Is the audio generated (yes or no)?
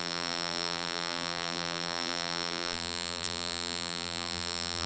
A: yes